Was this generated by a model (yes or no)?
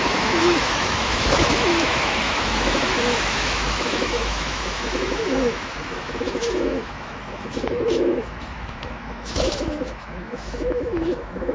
yes